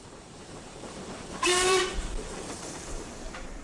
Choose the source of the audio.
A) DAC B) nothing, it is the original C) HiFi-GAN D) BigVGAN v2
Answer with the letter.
D